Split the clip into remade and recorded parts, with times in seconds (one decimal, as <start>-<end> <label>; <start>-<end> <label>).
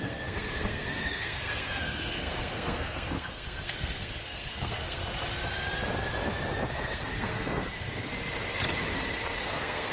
0.0-5.0 remade; 5.0-6.7 recorded; 6.7-8.1 remade; 8.1-9.4 recorded; 9.4-9.9 remade